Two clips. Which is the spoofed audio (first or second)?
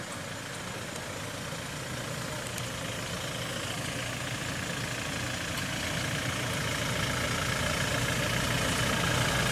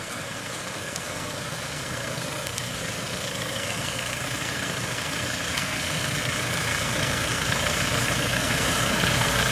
second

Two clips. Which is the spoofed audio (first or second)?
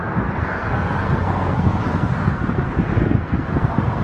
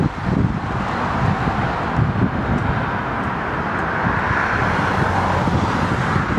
first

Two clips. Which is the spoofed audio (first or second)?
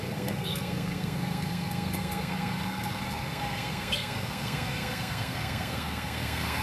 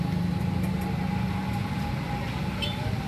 first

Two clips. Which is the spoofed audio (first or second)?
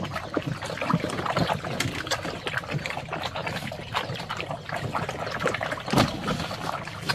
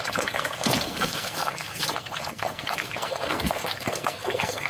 second